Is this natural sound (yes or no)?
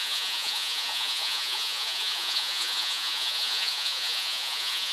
no